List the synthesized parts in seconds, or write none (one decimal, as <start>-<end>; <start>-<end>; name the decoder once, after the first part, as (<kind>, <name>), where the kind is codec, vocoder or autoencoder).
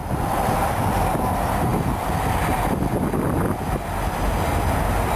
none